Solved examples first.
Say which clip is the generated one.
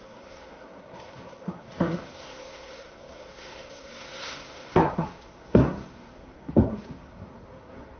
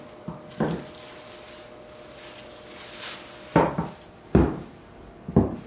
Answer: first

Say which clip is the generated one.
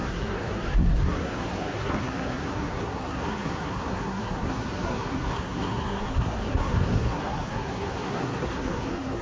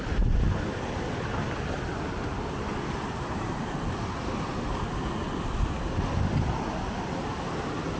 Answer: first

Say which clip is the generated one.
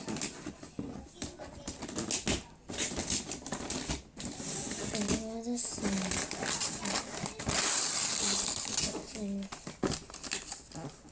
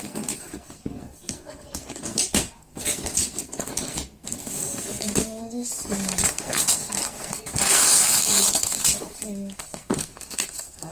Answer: second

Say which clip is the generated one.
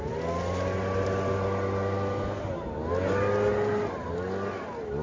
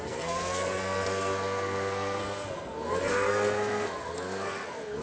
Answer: second